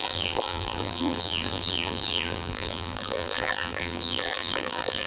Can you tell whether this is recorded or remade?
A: remade